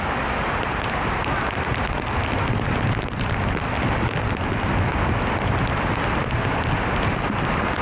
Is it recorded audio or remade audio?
recorded